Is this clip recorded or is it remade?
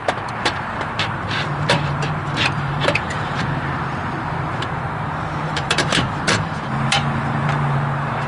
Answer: remade